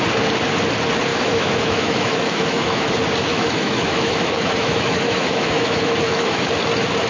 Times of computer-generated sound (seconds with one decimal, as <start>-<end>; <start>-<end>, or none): 1.1-2.9; 3.3-6.5